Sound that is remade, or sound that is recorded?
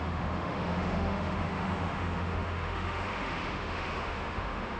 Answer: remade